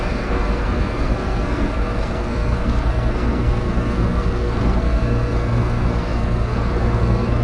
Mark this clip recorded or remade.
remade